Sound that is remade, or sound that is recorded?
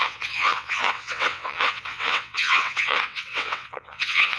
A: remade